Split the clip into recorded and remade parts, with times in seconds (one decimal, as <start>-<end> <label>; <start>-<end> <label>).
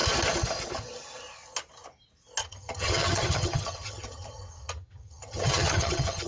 0.0-2.4 recorded; 2.4-6.3 remade